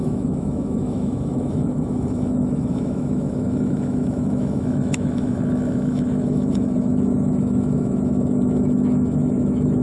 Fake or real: fake